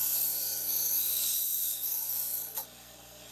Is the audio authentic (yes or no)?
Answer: no